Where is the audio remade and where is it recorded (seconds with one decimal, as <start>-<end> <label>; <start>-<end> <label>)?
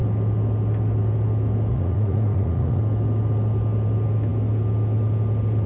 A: 0.0-1.7 recorded; 1.7-2.8 remade; 2.8-5.7 recorded